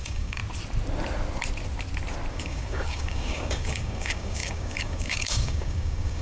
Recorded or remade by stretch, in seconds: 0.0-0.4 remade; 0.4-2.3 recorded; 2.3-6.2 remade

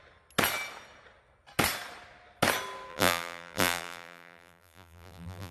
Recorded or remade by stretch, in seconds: 0.0-2.9 recorded; 2.9-5.5 remade

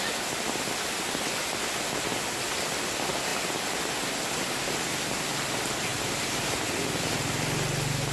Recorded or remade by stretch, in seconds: 0.0-5.9 recorded; 5.9-6.6 remade; 6.6-8.1 recorded

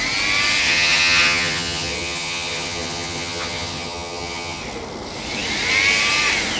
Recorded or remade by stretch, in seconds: 0.0-0.6 recorded; 0.6-4.6 remade; 4.6-6.6 recorded